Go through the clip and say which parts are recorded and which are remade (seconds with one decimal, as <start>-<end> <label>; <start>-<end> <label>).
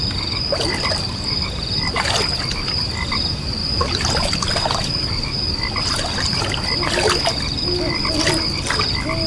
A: 0.0-9.3 recorded